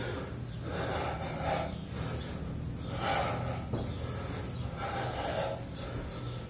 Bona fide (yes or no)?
yes